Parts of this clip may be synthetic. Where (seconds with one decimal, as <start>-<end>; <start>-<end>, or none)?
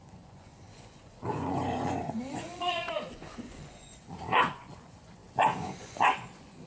0.0-6.7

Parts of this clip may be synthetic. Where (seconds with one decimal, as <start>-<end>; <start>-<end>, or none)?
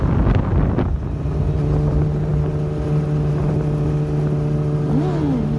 none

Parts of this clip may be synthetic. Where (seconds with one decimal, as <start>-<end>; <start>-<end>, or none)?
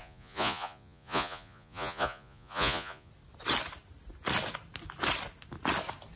0.0-3.1